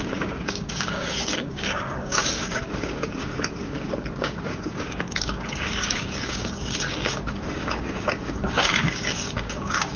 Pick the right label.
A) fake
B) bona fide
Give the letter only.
A